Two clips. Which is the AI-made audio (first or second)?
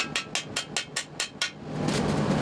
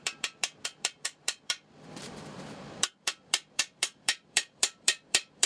second